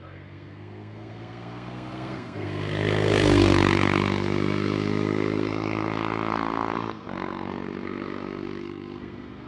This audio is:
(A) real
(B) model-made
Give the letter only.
B